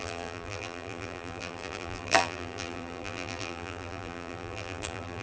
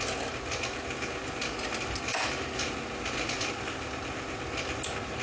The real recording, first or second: second